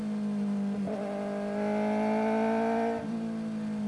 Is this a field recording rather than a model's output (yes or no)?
yes